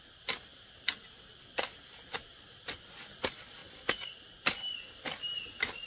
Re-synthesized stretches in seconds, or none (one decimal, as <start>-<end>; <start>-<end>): none